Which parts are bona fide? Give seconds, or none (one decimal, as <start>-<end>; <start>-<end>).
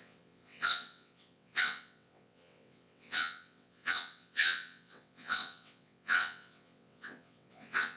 none